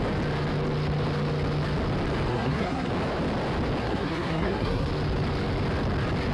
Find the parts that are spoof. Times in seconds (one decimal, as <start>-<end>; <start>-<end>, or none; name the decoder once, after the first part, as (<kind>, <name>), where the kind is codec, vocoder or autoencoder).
2.3-2.9 (codec, SNAC); 3.8-4.9